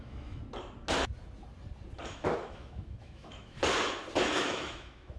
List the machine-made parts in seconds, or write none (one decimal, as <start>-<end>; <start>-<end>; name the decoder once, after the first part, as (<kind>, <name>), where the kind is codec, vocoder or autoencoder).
0.0-0.4 (autoencoder, DAC-VAE); 2.1-3.6; 4.3-5.2